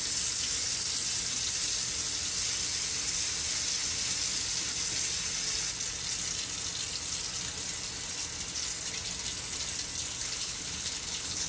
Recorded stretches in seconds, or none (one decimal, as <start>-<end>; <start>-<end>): 0.0-10.2

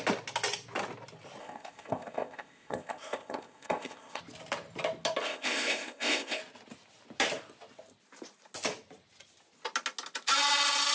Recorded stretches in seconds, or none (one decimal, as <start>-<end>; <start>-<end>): 0.0-1.4; 4.2-5.2; 6.4-10.9

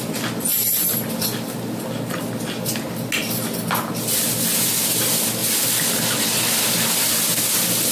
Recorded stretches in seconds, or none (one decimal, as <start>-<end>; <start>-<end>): 0.0-7.9